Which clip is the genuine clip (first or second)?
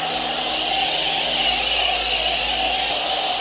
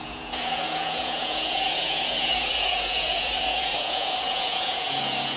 first